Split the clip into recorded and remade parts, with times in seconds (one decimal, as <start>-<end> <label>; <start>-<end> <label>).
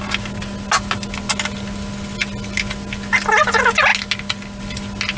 0.0-5.2 recorded